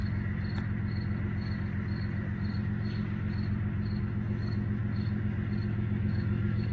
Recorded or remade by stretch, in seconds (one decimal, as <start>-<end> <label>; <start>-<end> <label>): 0.0-4.0 recorded; 4.0-4.8 remade; 4.8-5.6 recorded; 5.6-6.7 remade